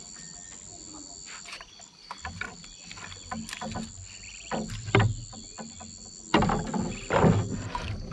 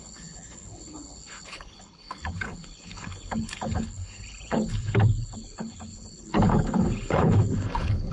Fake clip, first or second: second